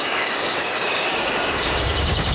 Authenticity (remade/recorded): remade